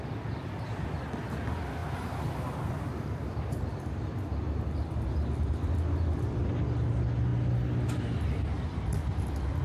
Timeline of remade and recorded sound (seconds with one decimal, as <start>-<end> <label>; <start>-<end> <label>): 0.0-9.6 recorded